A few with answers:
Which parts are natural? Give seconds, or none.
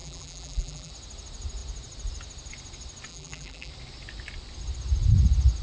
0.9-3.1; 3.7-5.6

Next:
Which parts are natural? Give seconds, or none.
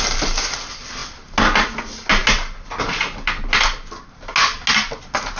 0.0-5.4